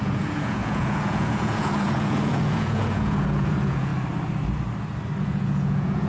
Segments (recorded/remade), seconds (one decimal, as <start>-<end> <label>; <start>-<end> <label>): 0.0-3.9 remade; 3.9-5.2 recorded; 5.2-6.1 remade